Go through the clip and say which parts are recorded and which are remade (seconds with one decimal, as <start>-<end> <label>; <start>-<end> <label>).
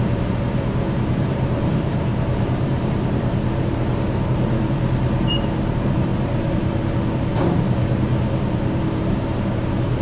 0.0-10.0 remade